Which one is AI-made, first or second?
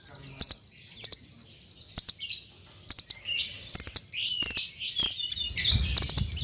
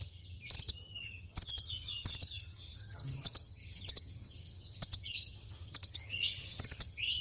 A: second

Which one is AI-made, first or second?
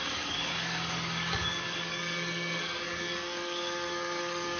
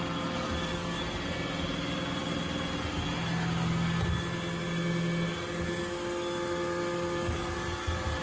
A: first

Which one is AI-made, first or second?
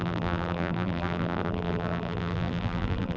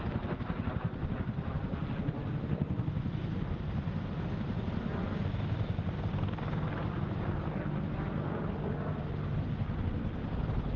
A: first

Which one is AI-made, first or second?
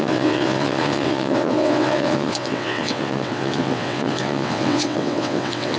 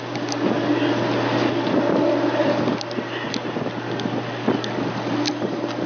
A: first